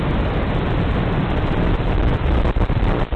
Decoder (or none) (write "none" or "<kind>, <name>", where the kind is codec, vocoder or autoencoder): none